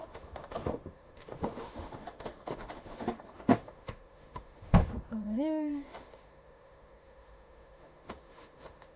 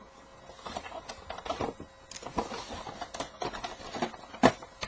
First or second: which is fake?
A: first